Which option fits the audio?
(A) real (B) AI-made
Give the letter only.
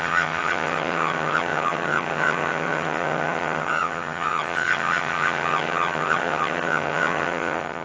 B